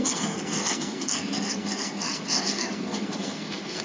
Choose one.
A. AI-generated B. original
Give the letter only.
A